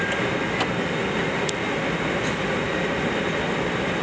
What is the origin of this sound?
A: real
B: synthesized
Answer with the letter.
A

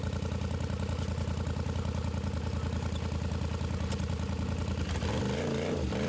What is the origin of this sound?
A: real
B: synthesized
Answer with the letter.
A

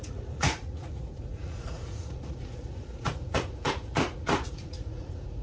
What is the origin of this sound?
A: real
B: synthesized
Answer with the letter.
B